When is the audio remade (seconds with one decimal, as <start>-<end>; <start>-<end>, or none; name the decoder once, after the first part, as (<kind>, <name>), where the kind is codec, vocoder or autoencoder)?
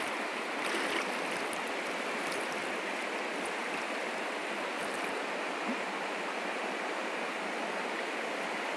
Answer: 2.6-3.2 (vocoder, BigVGAN v2); 3.6-4.8